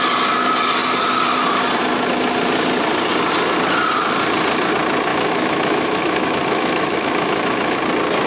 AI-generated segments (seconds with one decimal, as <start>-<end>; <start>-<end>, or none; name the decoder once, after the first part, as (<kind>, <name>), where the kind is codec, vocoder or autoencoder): 5.1-7.8 (autoencoder, DAC-VAE)